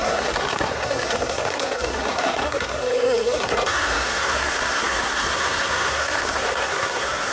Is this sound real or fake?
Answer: fake